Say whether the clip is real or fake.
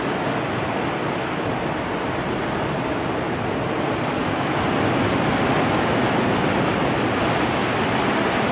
real